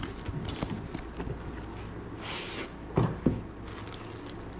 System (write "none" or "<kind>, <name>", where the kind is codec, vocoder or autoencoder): none